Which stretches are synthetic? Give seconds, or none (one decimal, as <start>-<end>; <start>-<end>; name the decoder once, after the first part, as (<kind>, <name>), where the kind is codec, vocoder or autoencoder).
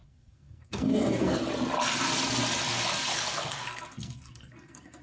0.0-1.4 (codec, SNAC); 3.1-5.0